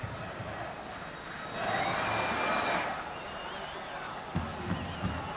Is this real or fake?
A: real